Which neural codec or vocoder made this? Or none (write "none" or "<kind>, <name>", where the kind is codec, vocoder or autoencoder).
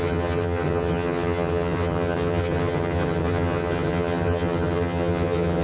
vocoder, HiFi-GAN